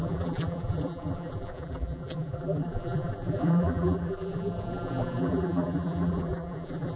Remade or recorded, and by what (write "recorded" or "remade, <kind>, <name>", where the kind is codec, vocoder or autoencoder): remade, vocoder, BigVGAN v2